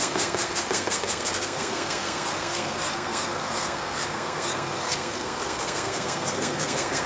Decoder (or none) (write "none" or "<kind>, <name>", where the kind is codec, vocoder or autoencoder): codec, SNAC